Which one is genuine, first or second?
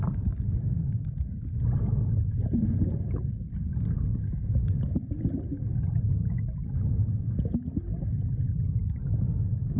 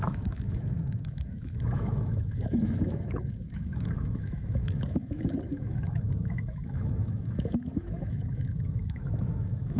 first